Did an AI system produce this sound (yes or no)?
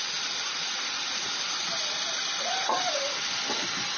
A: no